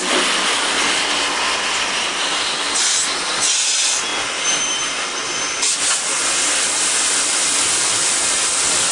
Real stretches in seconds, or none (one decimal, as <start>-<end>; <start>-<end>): 0.0-8.9